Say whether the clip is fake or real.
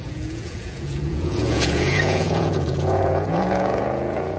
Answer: fake